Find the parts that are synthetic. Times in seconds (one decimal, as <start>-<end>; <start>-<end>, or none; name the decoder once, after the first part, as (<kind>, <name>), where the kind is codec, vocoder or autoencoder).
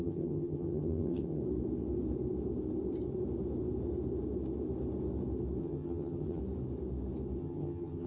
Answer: 0.0-1.4 (vocoder, HiFi-GAN); 5.6-6.4; 7.4-8.1